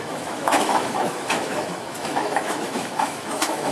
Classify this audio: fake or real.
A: fake